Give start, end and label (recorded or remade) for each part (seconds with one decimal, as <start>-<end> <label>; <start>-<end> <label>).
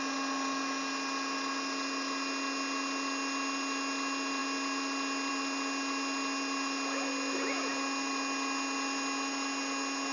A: 0.0-10.1 recorded